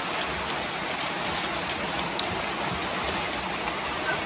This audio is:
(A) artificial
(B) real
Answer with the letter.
B